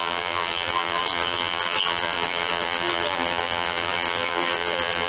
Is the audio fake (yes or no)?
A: yes